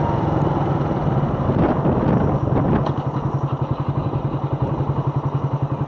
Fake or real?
real